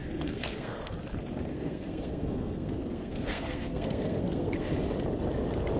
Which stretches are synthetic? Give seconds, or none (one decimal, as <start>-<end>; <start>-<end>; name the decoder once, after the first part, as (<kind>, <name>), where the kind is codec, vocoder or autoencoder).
0.0-0.9 (codec, SNAC); 1.5-4.7